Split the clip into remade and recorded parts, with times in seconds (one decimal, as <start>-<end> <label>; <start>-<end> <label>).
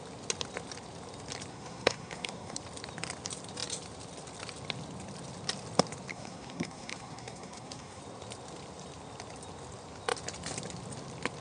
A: 0.0-1.5 recorded; 1.5-2.6 remade; 2.6-6.1 recorded; 6.1-8.0 remade; 8.0-11.4 recorded